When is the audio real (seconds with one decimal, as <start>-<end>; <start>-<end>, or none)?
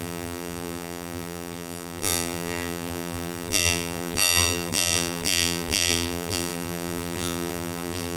none